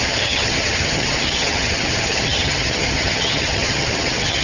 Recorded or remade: remade